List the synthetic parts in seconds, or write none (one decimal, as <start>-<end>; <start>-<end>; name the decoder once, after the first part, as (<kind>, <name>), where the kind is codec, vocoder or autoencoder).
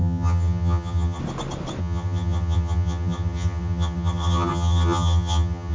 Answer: 0.0-1.2 (vocoder, HiFi-GAN); 1.8-5.7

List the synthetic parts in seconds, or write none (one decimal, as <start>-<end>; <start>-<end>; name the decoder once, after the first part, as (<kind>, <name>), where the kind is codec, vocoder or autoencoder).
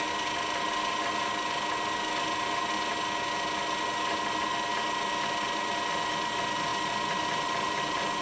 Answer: none